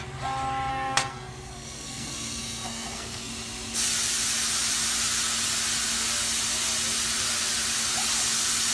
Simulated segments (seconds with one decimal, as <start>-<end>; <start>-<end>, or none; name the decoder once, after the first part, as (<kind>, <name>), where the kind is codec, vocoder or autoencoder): 0.7-3.3 (codec, SNAC)